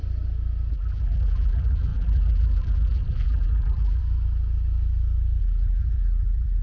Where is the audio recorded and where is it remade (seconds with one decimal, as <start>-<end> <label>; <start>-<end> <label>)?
0.0-0.7 recorded; 0.7-4.0 remade; 4.0-5.4 recorded; 5.4-6.6 remade